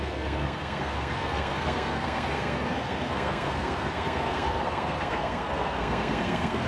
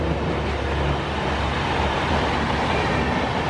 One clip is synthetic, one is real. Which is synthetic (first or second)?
first